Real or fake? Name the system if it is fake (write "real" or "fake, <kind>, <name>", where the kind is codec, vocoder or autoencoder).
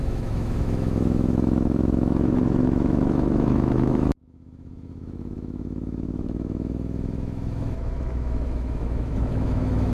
fake, autoencoder, DAC-VAE